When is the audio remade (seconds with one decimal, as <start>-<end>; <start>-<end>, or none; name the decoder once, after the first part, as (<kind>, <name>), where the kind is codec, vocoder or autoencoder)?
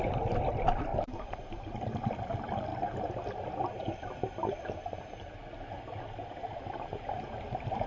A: 0.0-0.9 (vocoder, BigVGAN v2); 1.6-2.7; 7.4-7.9